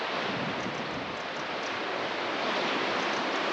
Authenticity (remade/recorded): recorded